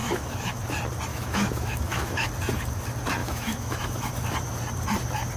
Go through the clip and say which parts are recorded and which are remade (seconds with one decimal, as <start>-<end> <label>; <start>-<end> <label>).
0.0-0.6 remade; 0.6-1.1 recorded; 1.1-2.3 remade; 2.3-3.2 recorded; 3.2-4.1 remade; 4.1-5.4 recorded